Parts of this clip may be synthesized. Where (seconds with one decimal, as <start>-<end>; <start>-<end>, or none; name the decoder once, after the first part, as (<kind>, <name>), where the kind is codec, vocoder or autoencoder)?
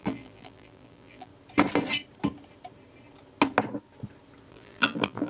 0.0-1.3 (vocoder, BigVGAN v2); 4.5-5.3